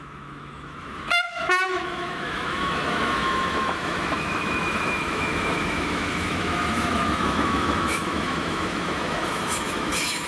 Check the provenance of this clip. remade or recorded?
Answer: remade